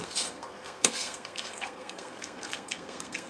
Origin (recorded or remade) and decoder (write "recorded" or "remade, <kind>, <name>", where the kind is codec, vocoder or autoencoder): remade, codec, SNAC